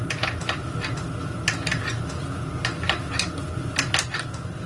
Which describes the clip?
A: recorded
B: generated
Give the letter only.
A